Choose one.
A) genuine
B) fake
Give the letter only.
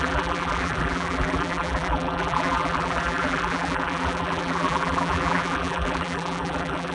B